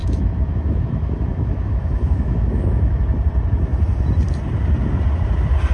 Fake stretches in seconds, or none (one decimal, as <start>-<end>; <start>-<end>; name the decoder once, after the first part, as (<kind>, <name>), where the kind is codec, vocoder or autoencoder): 0.0-3.1 (autoencoder, DAC-VAE)